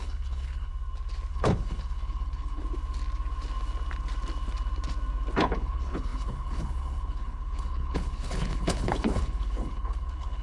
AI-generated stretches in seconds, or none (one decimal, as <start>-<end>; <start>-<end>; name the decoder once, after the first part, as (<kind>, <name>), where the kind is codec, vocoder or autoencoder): 0.0-0.7 (codec, HILCodec); 1.3-2.6; 5.4-10.4